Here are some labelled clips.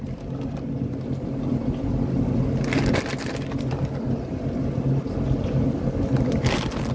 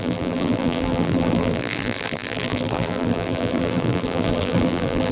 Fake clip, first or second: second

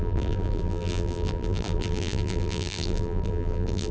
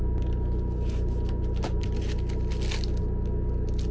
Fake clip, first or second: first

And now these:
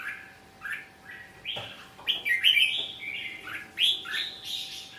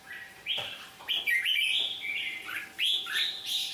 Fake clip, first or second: second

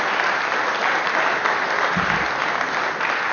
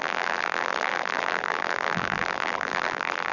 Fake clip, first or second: second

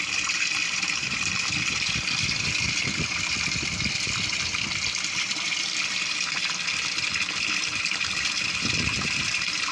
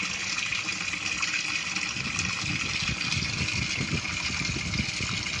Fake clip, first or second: first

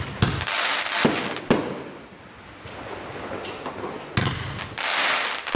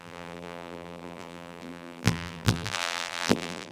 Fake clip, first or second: second